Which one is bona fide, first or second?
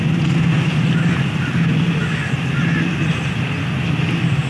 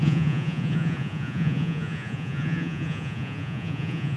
first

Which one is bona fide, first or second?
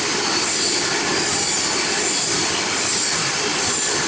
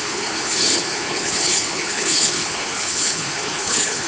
first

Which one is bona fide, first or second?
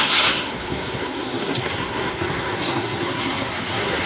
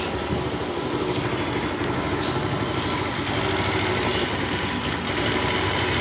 second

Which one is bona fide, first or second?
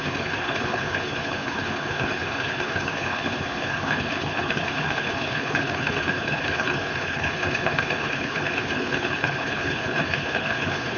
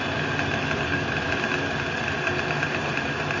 second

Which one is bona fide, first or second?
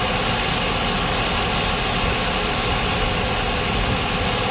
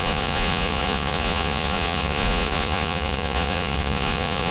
first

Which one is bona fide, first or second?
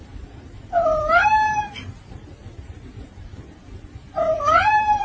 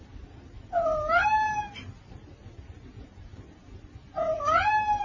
second